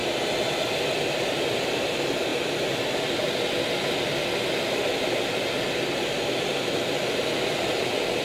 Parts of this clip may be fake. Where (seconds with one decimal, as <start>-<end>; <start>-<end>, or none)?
none